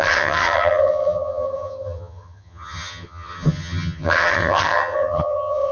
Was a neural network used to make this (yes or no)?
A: yes